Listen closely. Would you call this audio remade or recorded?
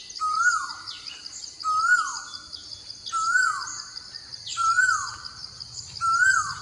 recorded